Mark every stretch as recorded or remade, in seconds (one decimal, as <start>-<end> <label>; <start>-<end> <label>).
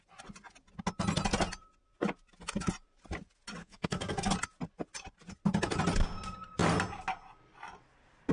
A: 0.0-3.6 recorded; 3.6-4.3 remade; 4.3-8.3 recorded